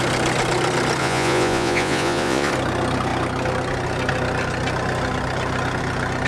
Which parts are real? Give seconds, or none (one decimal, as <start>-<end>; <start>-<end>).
0.0-1.0; 2.5-6.3